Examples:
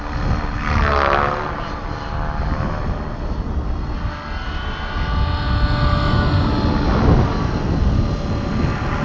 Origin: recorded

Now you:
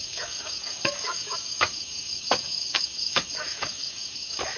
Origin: remade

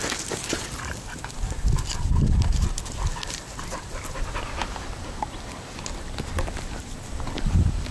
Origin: recorded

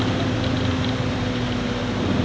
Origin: recorded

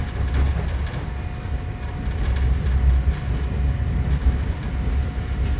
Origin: recorded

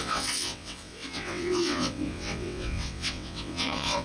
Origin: remade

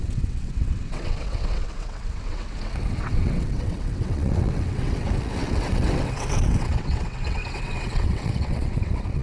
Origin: remade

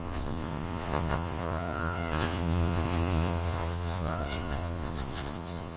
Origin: remade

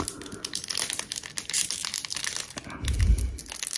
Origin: recorded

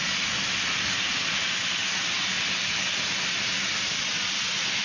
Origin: recorded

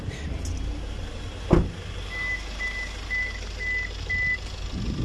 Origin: recorded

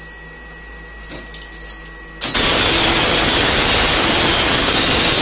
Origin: recorded